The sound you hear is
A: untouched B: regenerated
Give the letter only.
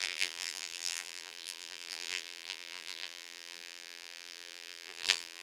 B